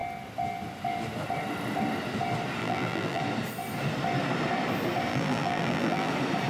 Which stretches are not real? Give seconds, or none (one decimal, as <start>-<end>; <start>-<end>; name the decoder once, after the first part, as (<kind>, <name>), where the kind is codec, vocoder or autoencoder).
2.6-3.2 (vocoder, BigVGAN v2); 5.1-6.1